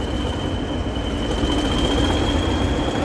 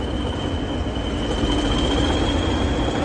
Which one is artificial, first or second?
first